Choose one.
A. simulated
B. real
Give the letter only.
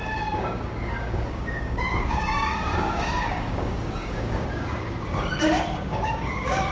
A